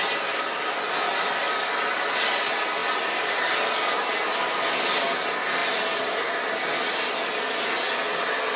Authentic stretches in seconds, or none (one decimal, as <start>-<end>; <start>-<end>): 0.0-8.6